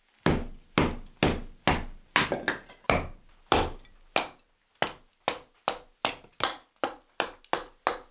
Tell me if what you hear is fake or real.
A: real